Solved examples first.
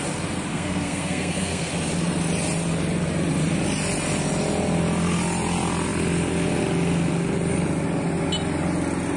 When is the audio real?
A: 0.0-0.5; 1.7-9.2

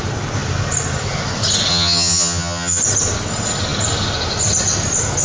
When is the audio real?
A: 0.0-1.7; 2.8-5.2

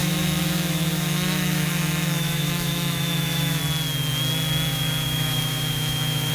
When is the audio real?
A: 3.6-4.7

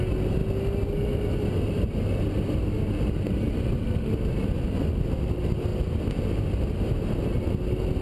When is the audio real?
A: 0.0-8.0

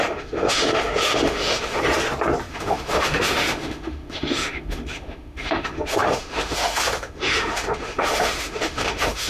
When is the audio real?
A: 1.8-2.5